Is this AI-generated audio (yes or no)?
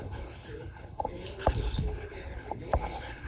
yes